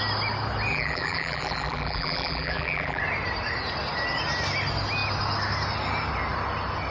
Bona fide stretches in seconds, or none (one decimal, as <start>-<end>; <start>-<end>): 0.0-0.7; 3.0-6.9